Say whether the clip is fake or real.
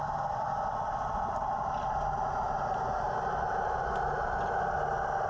real